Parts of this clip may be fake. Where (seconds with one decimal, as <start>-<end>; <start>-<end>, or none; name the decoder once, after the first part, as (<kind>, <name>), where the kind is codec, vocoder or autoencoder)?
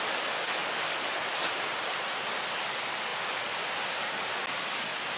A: none